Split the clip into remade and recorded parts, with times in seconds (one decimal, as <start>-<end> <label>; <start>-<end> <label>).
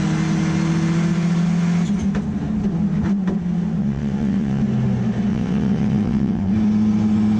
0.0-3.8 recorded; 3.8-4.6 remade; 4.6-5.3 recorded; 5.3-6.5 remade; 6.5-7.4 recorded